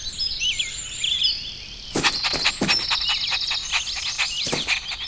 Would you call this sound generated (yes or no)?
no